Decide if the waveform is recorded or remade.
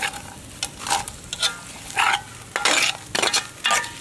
recorded